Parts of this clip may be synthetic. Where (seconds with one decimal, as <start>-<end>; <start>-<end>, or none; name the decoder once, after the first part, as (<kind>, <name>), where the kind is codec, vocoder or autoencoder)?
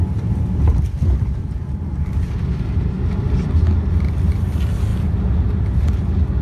none